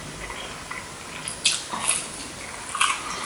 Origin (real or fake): real